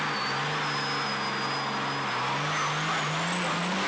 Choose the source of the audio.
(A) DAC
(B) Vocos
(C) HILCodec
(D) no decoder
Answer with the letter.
D